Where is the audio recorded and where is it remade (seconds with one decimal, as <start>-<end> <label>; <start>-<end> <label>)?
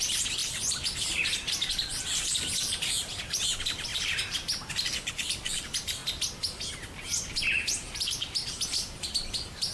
0.0-6.0 remade; 6.0-7.7 recorded; 7.7-9.7 remade